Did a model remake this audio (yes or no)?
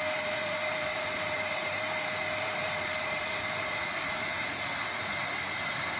yes